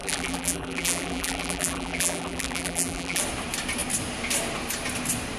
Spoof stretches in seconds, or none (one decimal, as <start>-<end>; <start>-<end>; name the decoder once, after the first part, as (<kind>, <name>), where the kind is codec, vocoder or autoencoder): 0.0-3.2 (vocoder, BigVGAN v2)